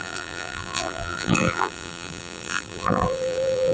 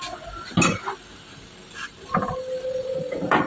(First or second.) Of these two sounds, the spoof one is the first